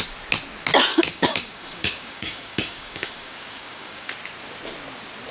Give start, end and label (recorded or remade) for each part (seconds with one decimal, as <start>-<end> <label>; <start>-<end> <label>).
0.0-0.9 recorded; 0.9-4.1 remade; 4.1-5.3 recorded